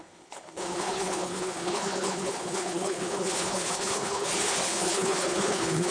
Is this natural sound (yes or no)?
no